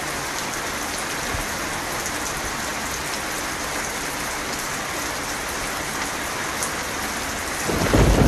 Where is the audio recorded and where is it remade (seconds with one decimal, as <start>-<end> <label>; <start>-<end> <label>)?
0.0-7.4 recorded; 7.4-8.3 remade